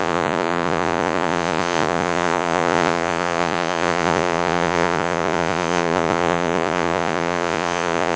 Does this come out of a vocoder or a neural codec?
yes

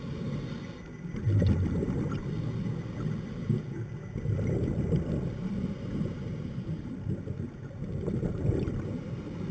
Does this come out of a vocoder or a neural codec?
no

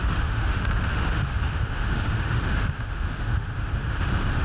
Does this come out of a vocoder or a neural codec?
yes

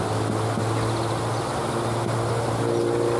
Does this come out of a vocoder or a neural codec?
no